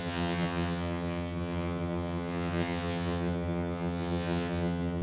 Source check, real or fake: fake